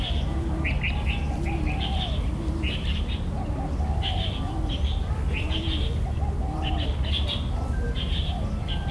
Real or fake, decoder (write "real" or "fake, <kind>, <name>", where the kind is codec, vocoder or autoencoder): real